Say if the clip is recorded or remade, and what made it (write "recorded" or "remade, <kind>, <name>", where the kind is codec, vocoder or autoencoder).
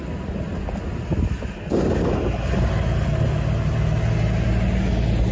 recorded